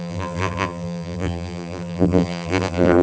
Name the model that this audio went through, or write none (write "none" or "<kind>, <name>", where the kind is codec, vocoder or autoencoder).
vocoder, BigVGAN v2